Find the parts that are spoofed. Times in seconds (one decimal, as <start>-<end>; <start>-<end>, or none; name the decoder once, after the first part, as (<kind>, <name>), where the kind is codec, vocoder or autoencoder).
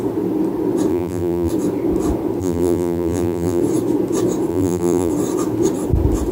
0.9-1.5 (vocoder, BigVGAN v2); 2.4-3.6; 4.5-5.1